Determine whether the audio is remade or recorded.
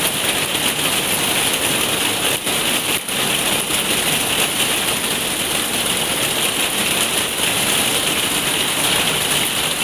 recorded